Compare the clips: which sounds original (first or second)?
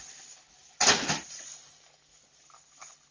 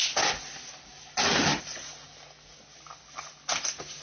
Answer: second